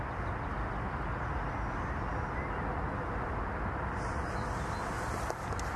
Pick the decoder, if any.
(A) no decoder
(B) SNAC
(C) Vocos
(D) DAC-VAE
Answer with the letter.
A